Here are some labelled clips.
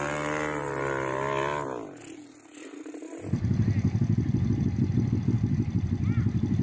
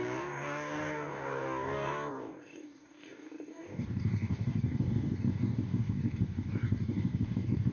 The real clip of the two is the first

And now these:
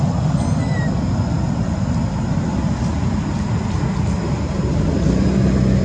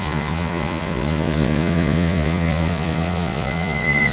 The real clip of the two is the first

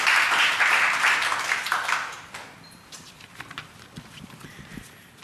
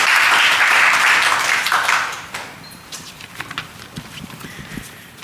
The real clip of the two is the first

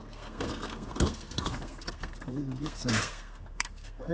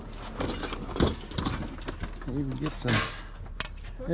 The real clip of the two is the second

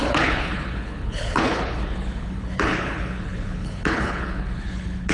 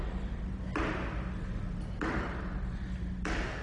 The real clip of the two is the second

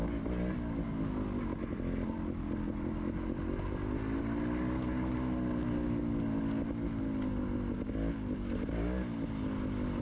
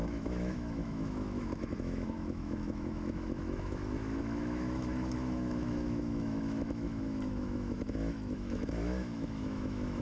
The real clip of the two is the first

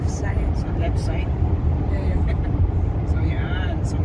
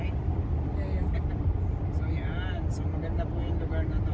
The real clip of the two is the second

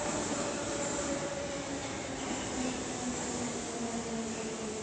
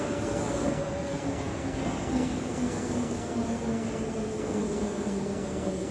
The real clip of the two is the first